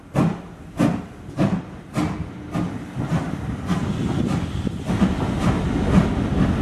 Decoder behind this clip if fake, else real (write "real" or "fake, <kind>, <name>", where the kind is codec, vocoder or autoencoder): real